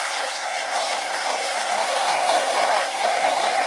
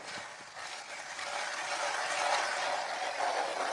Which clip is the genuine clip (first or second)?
second